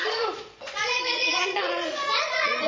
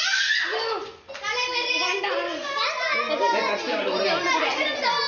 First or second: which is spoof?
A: first